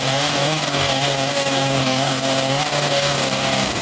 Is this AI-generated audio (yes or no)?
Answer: yes